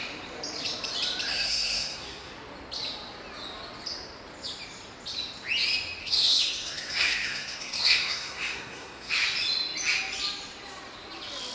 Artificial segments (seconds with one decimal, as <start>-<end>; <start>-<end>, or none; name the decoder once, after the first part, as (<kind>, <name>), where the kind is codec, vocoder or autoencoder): 1.3-2.3 (codec, SNAC); 6.0-9.1